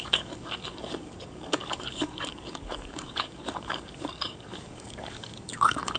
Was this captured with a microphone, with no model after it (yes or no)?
no